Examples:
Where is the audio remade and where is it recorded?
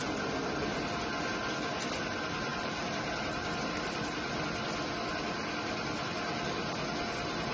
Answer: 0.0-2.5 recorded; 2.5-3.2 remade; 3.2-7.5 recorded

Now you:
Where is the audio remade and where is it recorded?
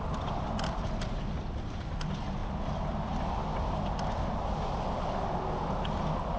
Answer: 0.0-6.4 recorded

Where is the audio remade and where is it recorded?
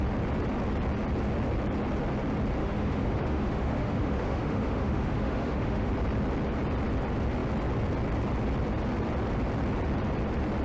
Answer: 0.0-2.6 recorded; 2.6-5.9 remade; 5.9-10.6 recorded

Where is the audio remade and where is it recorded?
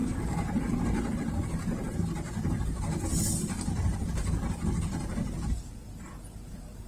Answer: 0.0-6.9 recorded